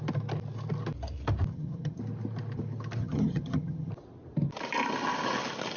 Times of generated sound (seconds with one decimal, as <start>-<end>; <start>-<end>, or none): 1.5-2.0; 3.0-3.9